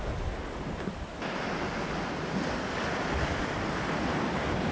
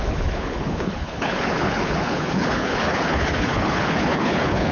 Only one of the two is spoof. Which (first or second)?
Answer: second